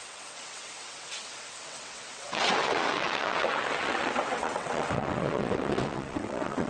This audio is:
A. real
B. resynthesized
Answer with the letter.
B